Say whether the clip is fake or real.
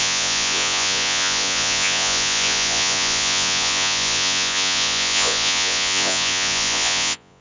fake